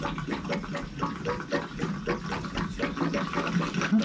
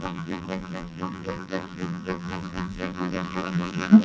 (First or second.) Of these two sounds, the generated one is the second